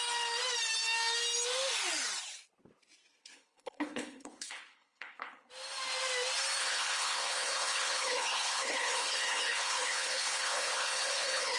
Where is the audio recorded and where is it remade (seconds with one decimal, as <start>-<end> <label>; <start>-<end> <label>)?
0.0-3.2 recorded; 3.2-5.5 remade; 5.5-6.6 recorded; 6.6-11.6 remade